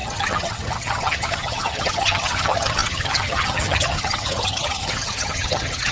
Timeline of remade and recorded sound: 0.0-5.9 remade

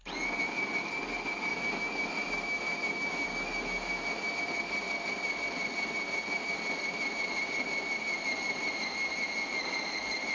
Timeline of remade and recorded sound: 0.0-1.5 recorded; 1.5-4.3 remade; 4.3-10.3 recorded

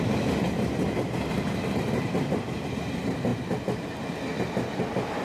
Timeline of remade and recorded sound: 0.0-1.3 recorded; 1.3-2.1 remade; 2.1-5.2 recorded

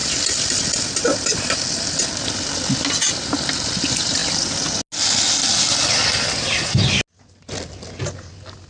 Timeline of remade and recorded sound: 0.0-8.7 recorded